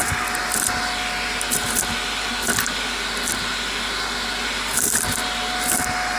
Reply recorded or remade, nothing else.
recorded